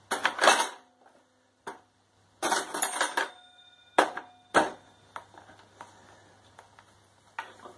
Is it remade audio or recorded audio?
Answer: recorded